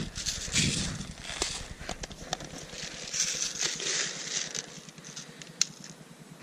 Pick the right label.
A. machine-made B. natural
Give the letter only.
B